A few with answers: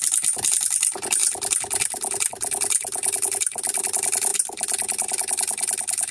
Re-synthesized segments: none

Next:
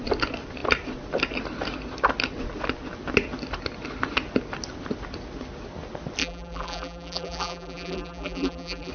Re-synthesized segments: 6.2-8.9 (vocoder, BigVGAN v2)